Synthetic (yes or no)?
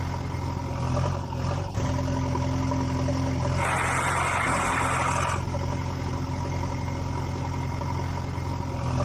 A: no